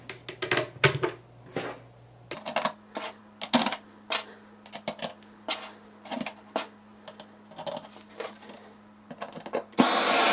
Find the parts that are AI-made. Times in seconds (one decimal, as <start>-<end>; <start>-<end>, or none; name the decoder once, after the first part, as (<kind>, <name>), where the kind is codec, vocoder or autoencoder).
none